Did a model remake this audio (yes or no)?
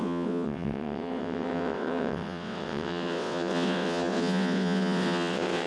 yes